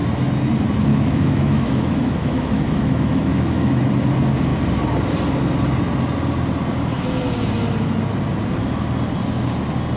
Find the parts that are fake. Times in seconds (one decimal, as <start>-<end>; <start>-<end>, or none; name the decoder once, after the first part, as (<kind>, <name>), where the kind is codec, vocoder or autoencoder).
0.9-3.8 (autoencoder, DAC-VAE)